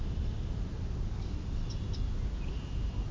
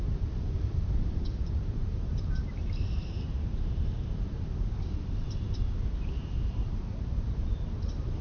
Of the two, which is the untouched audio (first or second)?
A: first